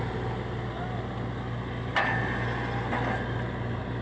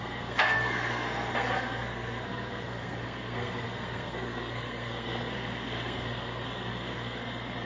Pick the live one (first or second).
first